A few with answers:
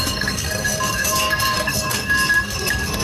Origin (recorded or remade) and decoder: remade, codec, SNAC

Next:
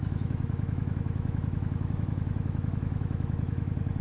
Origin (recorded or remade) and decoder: remade, autoencoder, DAC-VAE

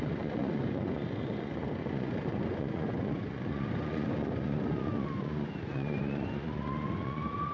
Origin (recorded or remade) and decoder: remade, vocoder, Vocos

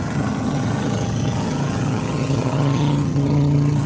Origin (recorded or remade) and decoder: remade, vocoder, HiFi-GAN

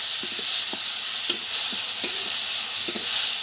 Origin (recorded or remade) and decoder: recorded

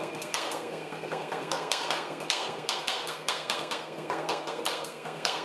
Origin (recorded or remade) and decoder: remade, codec, SNAC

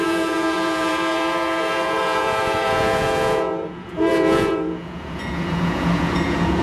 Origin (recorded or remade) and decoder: remade, vocoder, Vocos